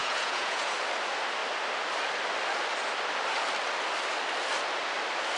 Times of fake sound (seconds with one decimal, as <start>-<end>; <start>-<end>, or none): 0.0-0.7